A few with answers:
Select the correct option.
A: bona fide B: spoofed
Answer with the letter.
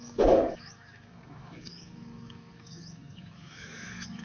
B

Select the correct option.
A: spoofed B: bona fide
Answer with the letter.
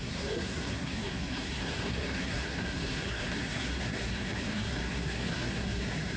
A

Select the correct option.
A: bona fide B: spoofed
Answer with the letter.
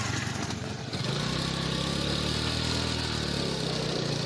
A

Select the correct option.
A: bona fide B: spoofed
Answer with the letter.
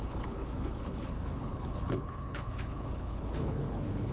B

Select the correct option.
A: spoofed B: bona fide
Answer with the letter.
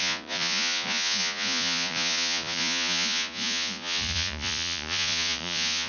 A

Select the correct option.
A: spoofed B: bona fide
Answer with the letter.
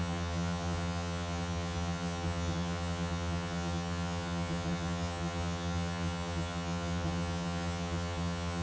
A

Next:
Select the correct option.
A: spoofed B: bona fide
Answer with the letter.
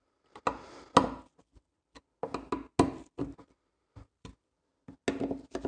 B